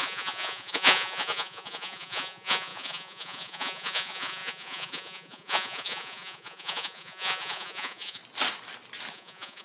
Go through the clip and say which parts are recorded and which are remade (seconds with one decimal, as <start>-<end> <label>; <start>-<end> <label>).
0.0-8.2 remade; 8.2-9.1 recorded; 9.1-9.6 remade